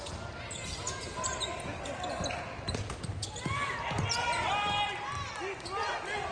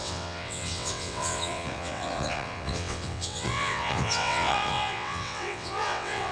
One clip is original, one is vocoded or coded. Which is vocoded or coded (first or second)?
second